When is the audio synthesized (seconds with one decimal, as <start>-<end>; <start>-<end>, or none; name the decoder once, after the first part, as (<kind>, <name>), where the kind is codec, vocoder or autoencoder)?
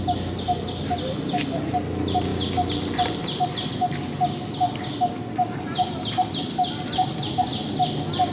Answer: none